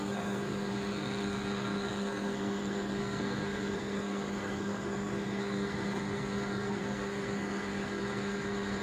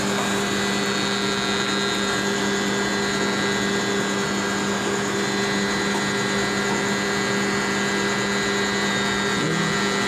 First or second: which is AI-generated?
first